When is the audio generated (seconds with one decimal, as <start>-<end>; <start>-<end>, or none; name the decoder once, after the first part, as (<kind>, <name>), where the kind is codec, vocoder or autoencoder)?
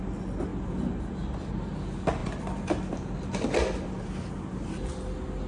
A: 2.2-4.3 (vocoder, BigVGAN v2)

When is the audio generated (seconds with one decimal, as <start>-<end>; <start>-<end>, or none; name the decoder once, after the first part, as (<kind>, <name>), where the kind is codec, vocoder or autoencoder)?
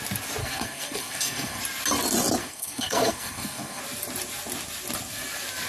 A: 0.4-1.6 (codec, SNAC); 2.4-3.8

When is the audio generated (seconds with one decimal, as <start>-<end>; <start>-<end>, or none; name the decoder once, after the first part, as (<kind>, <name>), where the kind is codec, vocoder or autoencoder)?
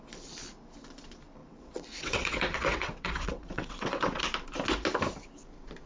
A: 1.4-4.2 (vocoder, WaveNeXt)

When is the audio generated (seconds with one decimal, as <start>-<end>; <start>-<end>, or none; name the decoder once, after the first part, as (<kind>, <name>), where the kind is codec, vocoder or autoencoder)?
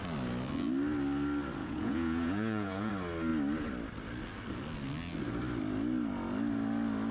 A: 1.6-2.9 (vocoder, Vocos)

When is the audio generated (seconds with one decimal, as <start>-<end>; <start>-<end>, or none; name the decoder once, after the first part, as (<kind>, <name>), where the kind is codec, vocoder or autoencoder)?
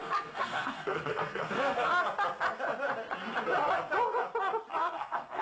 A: 0.0-1.9 (codec, SNAC); 4.8-5.4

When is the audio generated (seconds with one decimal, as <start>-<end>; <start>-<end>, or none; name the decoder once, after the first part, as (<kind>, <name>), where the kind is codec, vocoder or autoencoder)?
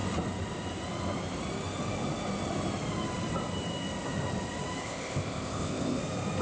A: 4.8-6.0 (codec, ZipCodec)